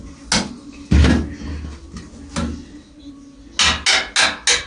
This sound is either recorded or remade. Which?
recorded